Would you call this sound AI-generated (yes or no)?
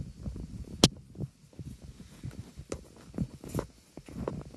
no